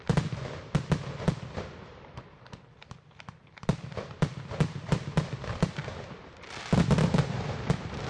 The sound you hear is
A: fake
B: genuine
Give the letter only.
A